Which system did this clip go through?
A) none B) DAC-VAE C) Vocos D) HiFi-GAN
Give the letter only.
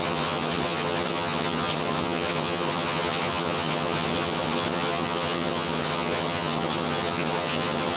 D